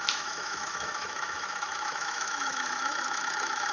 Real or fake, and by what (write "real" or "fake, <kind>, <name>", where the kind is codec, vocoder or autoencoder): fake, autoencoder, DAC-VAE